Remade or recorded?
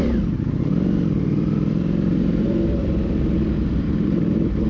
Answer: remade